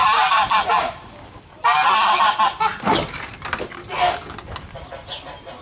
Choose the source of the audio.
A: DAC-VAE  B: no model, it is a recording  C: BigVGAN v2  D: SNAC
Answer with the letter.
B